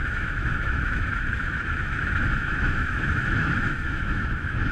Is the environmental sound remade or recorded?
remade